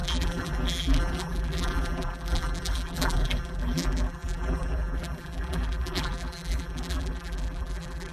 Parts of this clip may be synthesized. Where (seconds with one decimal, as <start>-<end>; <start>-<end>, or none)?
0.0-8.1